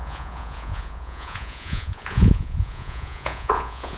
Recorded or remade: remade